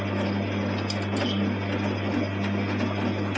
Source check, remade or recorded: recorded